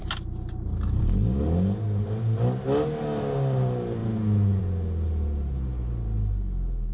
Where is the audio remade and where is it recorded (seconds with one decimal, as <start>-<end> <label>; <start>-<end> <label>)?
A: 0.0-6.9 recorded